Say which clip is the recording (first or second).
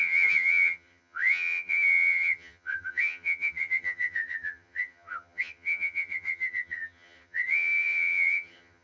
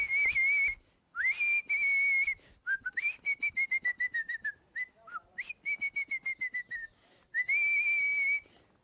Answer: second